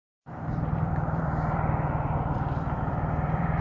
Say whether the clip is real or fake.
fake